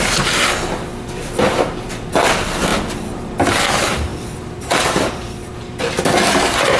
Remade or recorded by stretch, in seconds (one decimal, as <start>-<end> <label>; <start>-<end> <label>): 0.0-0.9 recorded; 0.9-2.3 remade; 2.3-4.1 recorded; 4.1-5.5 remade; 5.5-6.8 recorded